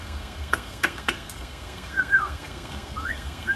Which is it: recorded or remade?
remade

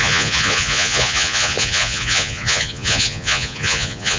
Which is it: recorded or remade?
remade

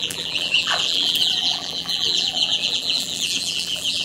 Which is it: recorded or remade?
remade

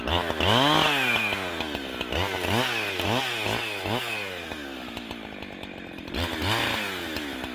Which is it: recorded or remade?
recorded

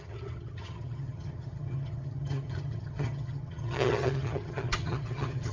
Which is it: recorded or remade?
remade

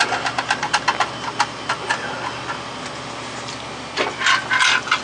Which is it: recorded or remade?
recorded